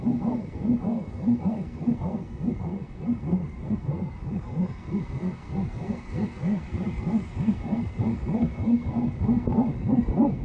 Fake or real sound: fake